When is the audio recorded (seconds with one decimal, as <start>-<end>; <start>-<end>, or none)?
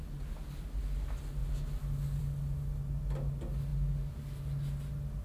0.0-5.2